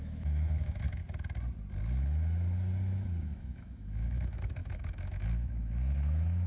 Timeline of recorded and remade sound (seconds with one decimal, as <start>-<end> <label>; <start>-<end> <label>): 0.0-1.0 remade; 1.0-3.2 recorded; 3.2-6.5 remade